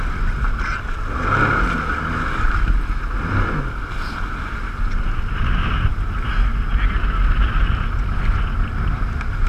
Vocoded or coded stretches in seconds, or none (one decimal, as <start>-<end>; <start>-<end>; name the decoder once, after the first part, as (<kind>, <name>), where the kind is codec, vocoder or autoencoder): none